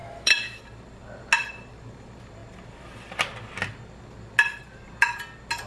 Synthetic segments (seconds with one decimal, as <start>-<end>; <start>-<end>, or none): 0.0-0.6